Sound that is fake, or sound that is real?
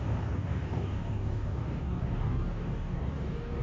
fake